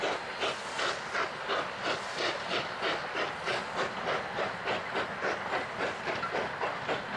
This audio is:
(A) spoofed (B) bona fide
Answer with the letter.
B